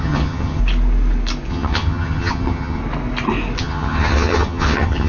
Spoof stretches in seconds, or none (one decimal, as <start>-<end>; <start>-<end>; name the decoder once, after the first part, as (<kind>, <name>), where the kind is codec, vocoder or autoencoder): 0.0-0.6 (vocoder, HiFi-GAN); 1.5-2.8; 3.6-5.1